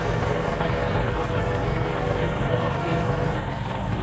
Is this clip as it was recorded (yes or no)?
no